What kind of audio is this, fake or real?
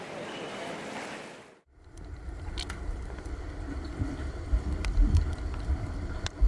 real